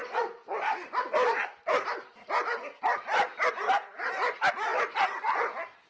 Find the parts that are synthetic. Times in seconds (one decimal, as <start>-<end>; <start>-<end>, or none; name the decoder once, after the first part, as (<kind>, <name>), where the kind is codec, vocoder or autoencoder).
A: none